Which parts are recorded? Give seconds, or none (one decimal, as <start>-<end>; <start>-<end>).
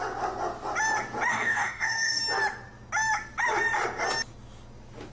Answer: 0.0-1.3; 2.2-5.1